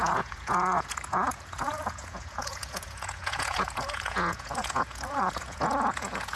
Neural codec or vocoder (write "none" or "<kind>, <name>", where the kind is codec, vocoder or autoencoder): vocoder, Vocos